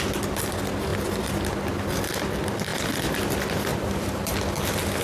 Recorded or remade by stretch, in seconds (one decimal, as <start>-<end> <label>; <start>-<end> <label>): 0.0-3.7 recorded; 3.7-4.3 remade; 4.3-5.0 recorded